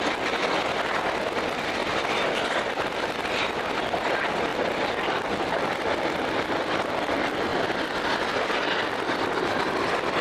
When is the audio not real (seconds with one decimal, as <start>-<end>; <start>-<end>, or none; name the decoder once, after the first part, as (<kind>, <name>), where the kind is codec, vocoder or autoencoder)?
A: none